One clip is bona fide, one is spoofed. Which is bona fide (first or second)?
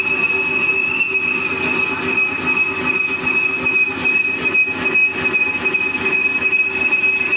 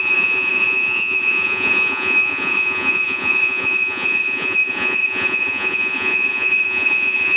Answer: first